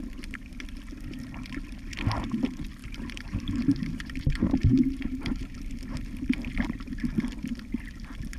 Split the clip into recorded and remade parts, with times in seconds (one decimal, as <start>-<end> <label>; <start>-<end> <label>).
0.0-2.8 recorded; 2.8-5.4 remade; 5.4-8.4 recorded